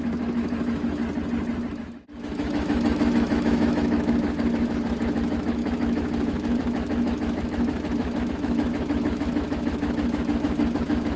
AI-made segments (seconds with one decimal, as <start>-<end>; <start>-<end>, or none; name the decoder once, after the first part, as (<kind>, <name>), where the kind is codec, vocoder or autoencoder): 0.0-1.0 (autoencoder, DAC-VAE); 1.7-11.2